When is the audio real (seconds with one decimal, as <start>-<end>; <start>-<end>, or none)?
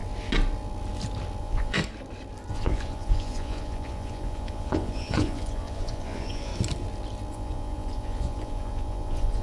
0.0-1.4; 1.8-2.5; 6.5-7.3